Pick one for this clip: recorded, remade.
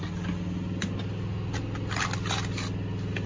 recorded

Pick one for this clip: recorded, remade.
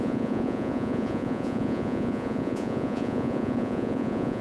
remade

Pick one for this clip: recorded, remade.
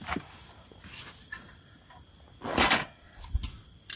recorded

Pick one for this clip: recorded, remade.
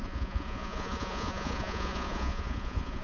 remade